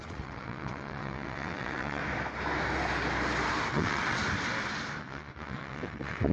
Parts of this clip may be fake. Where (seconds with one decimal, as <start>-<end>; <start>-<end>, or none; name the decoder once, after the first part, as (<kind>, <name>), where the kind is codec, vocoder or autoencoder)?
0.0-2.0 (vocoder, WaveNeXt); 3.7-4.2; 5.0-6.3